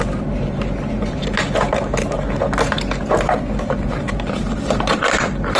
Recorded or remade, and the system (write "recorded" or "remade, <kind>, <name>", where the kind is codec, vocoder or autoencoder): recorded